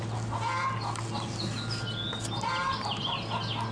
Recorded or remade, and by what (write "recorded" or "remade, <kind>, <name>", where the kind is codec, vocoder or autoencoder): recorded